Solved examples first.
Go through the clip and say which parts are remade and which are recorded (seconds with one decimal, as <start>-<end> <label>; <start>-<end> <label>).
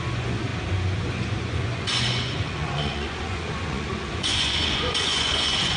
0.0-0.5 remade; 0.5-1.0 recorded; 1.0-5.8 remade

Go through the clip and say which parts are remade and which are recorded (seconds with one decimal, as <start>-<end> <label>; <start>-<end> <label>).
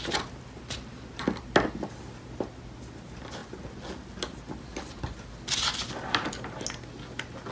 0.0-7.5 recorded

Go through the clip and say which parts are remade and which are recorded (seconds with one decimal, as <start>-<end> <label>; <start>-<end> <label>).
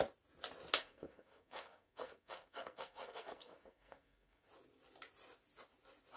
0.0-0.8 recorded; 0.8-4.5 remade; 4.5-6.2 recorded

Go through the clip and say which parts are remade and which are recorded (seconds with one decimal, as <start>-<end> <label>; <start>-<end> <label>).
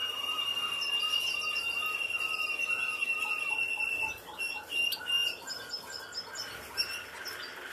0.0-0.6 remade; 0.6-5.2 recorded; 5.2-5.7 remade; 5.7-7.7 recorded